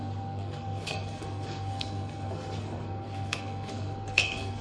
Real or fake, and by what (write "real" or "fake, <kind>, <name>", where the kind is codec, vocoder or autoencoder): fake, codec, SNAC